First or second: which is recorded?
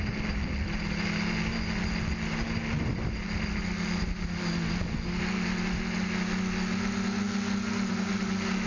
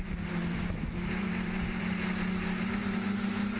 first